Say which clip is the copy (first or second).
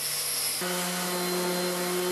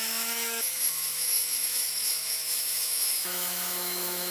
second